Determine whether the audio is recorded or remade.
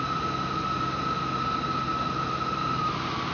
recorded